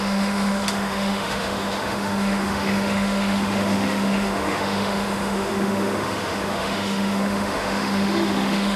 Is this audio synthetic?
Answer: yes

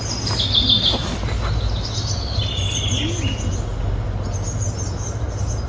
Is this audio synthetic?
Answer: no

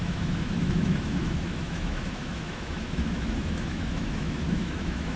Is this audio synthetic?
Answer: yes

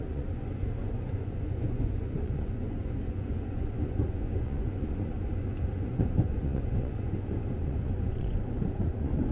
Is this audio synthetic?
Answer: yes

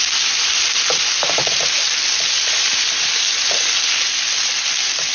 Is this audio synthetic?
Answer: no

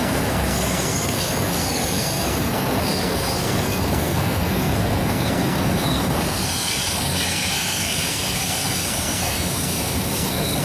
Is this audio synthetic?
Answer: yes